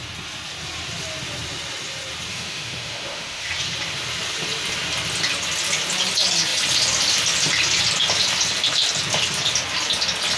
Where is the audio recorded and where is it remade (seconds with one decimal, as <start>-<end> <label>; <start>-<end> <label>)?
0.0-2.3 recorded; 2.3-3.5 remade; 3.5-10.4 recorded